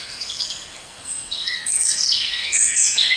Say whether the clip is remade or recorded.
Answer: remade